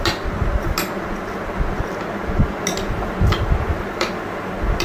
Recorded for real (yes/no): yes